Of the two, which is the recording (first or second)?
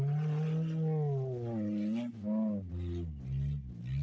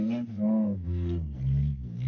first